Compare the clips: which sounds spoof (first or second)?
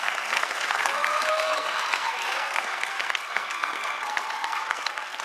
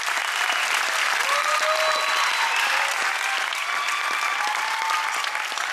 first